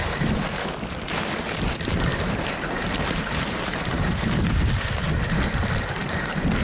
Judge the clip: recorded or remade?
remade